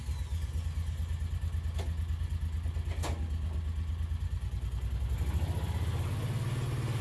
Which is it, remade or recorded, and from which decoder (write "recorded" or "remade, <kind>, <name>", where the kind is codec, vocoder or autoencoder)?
recorded